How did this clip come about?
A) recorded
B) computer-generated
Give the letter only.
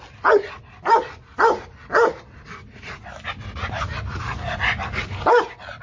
A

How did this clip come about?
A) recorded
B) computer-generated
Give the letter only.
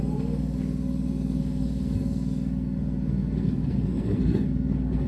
B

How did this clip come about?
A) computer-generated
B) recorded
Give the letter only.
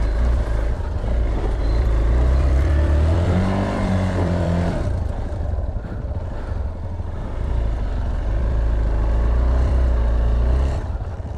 A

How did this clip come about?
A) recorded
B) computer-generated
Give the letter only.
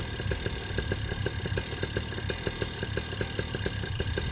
A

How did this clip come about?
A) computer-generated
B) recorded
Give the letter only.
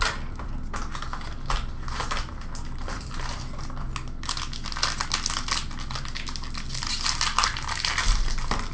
B